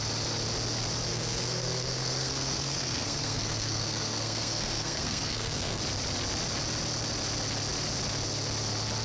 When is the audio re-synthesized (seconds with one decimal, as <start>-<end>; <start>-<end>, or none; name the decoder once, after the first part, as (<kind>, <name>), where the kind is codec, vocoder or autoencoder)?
1.1-5.8 (codec, SNAC)